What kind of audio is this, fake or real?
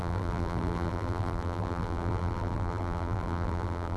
fake